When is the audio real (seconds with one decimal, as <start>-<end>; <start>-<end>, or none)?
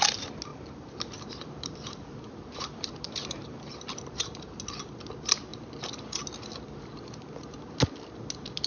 0.0-0.5; 4.6-8.7